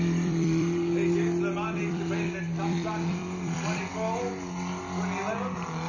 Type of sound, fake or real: fake